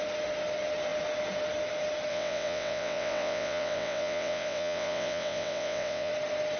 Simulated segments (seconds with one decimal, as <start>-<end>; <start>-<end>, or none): 2.1-6.1